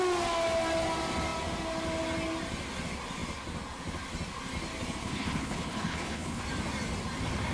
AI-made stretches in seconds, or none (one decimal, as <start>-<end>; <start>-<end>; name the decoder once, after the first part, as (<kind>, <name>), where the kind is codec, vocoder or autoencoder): 5.0-6.4 (codec, HILCodec)